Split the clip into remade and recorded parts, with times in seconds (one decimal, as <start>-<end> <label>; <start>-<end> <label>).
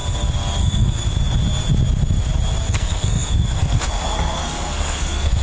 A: 0.0-0.6 recorded; 0.6-1.0 remade; 1.0-2.7 recorded; 2.7-5.4 remade